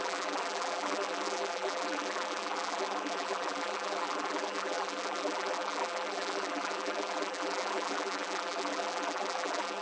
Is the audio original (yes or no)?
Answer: no